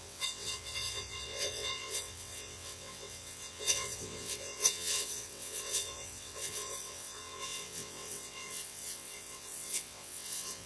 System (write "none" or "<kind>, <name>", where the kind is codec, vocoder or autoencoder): vocoder, WaveNeXt